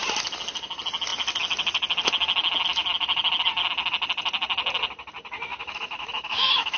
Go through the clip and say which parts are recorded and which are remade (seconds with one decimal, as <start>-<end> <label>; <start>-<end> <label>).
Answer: 0.0-5.5 recorded; 5.5-6.8 remade